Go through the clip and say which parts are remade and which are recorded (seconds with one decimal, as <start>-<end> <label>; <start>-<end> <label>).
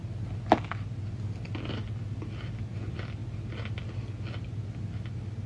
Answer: 0.0-5.5 recorded